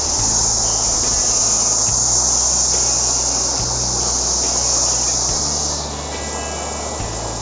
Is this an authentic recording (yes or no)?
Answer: yes